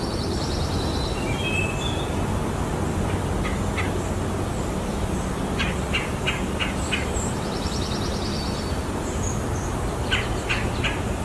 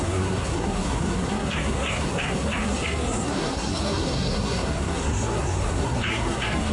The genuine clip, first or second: first